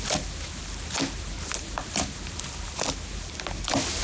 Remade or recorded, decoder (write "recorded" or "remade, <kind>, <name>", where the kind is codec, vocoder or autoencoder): recorded